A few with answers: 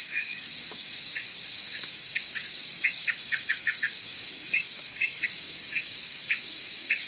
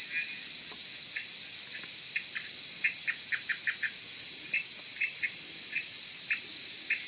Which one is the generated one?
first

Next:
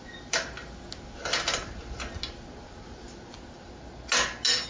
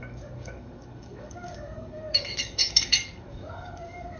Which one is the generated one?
second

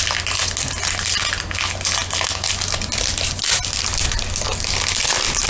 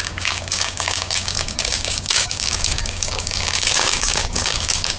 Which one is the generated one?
second